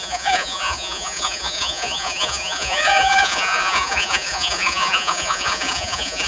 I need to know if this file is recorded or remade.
remade